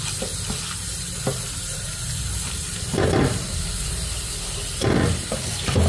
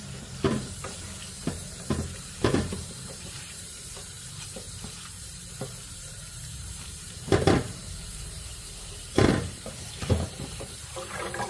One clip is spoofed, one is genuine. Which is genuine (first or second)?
first